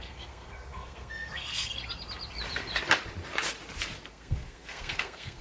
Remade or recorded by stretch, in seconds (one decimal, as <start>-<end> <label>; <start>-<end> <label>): 0.0-1.8 remade; 1.8-4.1 recorded; 4.1-5.4 remade